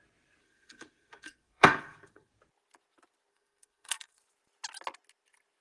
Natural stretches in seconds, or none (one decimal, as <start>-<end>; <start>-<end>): 0.0-0.4; 2.3-3.3; 4.2-5.6